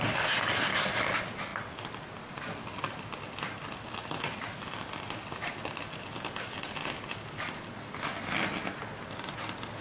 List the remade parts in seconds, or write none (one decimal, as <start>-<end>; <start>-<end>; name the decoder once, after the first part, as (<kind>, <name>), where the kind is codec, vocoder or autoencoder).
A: none